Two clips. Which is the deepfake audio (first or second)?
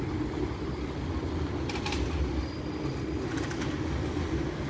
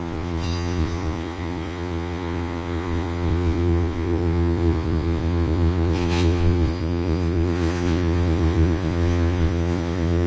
second